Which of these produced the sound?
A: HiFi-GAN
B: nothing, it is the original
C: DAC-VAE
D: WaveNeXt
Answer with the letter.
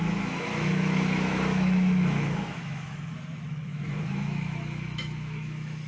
C